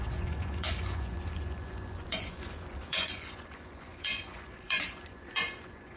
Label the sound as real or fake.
fake